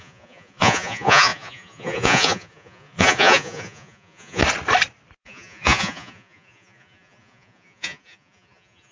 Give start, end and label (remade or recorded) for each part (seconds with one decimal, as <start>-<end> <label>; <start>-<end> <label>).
0.0-4.4 remade; 4.4-5.2 recorded; 5.2-8.9 remade